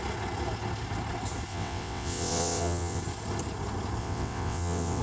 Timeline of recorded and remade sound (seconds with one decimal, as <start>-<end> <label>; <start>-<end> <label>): 0.0-1.5 recorded; 1.5-3.0 remade; 3.0-4.0 recorded; 4.0-5.0 remade